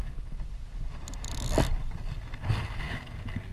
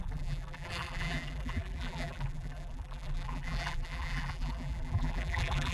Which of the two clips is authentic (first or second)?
first